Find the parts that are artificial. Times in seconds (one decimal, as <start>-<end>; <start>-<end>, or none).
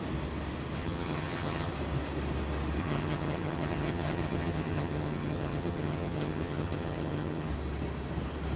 0.8-1.7; 2.8-7.5